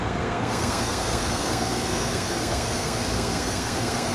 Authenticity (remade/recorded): remade